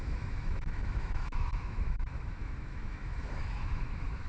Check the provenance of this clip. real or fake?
fake